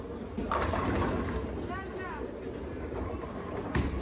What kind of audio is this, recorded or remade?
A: recorded